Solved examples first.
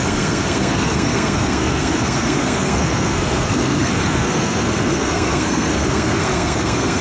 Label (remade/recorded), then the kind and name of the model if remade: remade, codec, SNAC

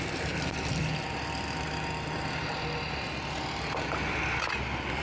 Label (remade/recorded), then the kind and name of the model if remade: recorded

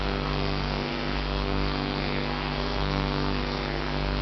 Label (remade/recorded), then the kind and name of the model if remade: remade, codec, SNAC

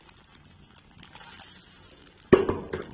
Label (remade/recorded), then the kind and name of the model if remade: recorded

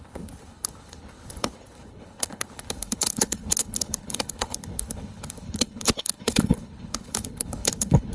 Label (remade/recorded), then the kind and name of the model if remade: remade, codec, HILCodec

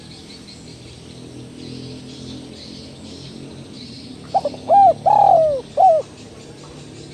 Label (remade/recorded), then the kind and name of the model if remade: recorded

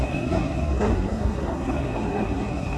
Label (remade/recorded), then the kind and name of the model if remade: remade, codec, SNAC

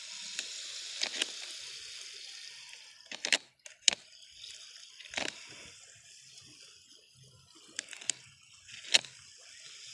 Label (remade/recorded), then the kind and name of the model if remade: recorded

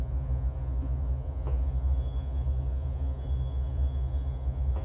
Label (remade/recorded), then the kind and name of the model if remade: remade, vocoder, Vocos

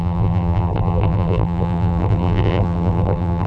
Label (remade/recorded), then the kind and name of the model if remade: remade, vocoder, BigVGAN v2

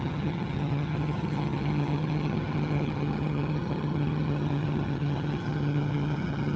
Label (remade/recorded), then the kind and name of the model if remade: remade, vocoder, HiFi-GAN